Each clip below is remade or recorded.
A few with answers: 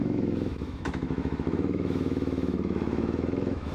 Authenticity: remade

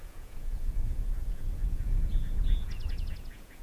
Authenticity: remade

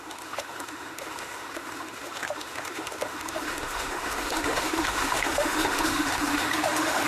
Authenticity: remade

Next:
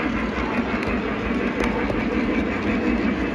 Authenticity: recorded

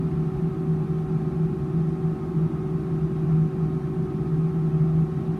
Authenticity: recorded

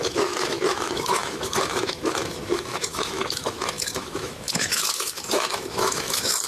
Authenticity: remade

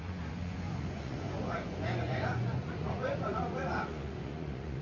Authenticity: remade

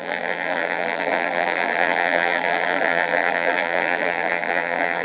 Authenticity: remade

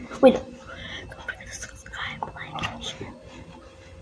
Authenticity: recorded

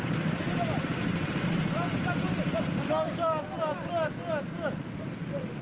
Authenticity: recorded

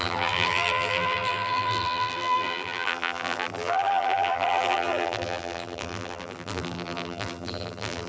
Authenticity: remade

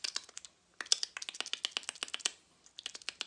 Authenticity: recorded